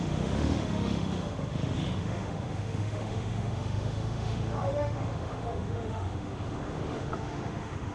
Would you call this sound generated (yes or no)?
yes